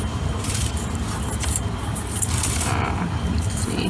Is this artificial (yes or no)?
yes